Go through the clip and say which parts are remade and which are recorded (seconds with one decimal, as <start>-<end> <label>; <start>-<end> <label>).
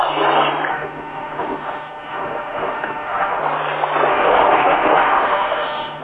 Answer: 0.0-0.7 recorded; 0.7-3.4 remade; 3.4-4.1 recorded; 4.1-6.0 remade